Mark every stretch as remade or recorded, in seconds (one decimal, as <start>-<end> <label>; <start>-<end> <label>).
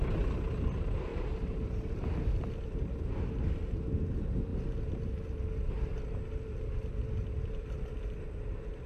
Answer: 0.0-8.9 recorded